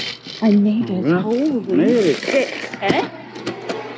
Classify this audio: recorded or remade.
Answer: recorded